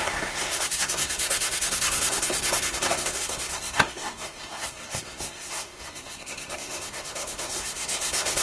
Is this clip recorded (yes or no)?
no